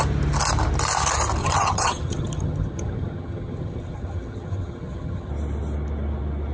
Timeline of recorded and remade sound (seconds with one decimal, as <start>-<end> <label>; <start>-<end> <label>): 0.0-1.4 recorded; 1.4-5.3 remade; 5.3-6.5 recorded